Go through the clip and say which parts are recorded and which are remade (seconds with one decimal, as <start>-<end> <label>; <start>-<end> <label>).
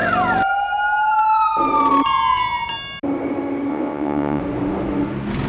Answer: 0.0-3.7 recorded; 3.7-4.4 remade; 4.4-5.5 recorded